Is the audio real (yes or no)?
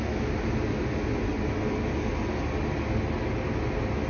yes